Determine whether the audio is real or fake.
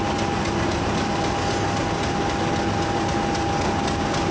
real